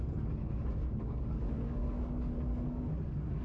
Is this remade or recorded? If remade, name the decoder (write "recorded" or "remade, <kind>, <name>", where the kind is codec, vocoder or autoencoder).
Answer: remade, codec, DAC